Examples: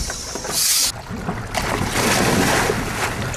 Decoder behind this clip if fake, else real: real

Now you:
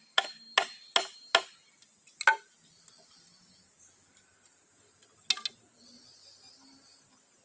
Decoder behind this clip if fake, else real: real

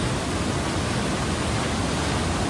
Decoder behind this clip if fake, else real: real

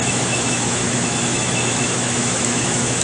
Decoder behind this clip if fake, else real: fake, autoencoder, DAC-VAE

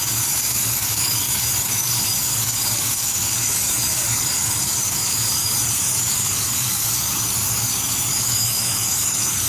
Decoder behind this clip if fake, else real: fake, codec, DAC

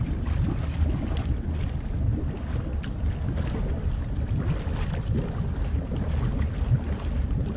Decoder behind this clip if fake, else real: real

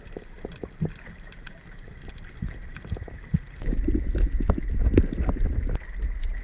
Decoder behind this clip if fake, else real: real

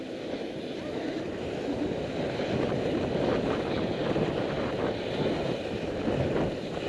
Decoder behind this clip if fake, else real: real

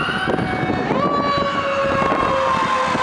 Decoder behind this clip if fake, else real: real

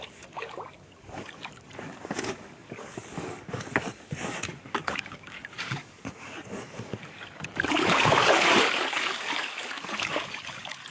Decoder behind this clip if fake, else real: fake, codec, DAC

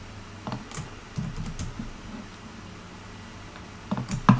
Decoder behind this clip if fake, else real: real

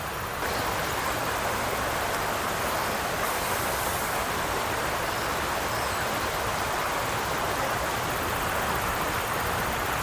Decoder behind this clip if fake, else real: real